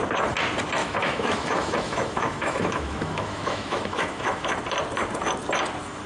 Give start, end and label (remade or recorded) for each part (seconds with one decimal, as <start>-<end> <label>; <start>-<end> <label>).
0.0-0.8 recorded; 0.8-4.5 remade; 4.5-6.1 recorded